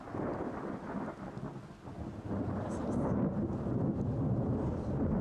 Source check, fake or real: real